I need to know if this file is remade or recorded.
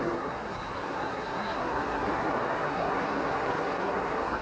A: remade